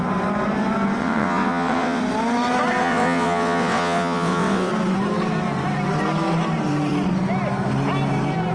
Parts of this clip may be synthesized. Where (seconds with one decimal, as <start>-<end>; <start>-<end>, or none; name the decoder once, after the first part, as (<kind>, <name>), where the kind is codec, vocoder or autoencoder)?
1.0-2.0 (vocoder, WaveNeXt); 2.8-4.7